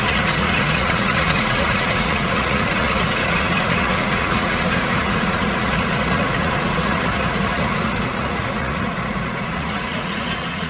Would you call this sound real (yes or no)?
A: no